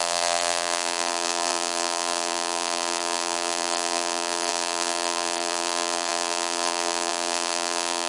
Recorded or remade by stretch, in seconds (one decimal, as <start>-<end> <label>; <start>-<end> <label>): 0.0-8.1 remade